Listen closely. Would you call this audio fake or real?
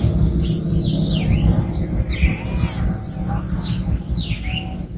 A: real